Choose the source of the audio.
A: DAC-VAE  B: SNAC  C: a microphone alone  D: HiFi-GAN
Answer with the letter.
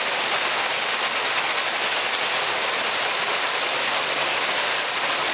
C